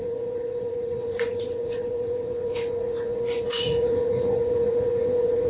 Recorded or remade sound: remade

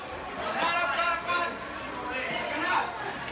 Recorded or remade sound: recorded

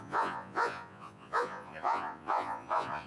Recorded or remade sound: remade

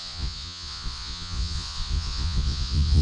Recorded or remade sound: remade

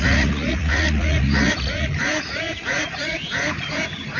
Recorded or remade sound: remade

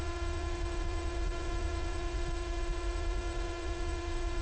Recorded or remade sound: remade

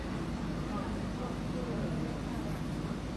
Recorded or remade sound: recorded